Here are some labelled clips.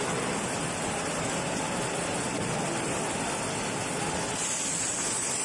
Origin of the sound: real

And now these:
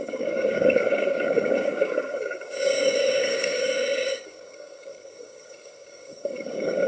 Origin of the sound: fake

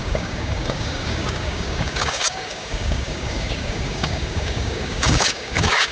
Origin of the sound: fake